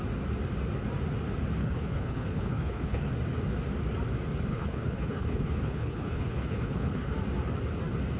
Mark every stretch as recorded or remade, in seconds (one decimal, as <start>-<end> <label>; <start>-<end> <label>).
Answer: 0.0-1.6 recorded; 1.6-3.1 remade; 3.1-4.5 recorded; 4.5-7.1 remade; 7.1-8.2 recorded